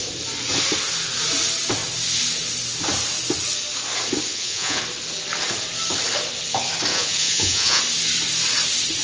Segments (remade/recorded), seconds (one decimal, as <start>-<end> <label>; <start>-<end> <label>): 0.0-4.3 recorded; 4.3-4.8 remade; 4.8-6.9 recorded; 6.9-7.8 remade; 7.8-9.0 recorded